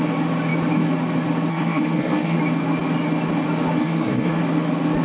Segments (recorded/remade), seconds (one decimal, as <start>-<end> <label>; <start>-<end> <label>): 0.0-1.5 recorded; 1.5-2.4 remade; 2.4-3.8 recorded; 3.8-4.4 remade; 4.4-5.0 recorded